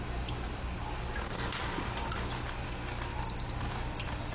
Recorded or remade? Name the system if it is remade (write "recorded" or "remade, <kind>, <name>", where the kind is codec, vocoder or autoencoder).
recorded